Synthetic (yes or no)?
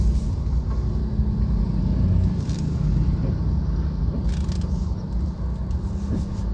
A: no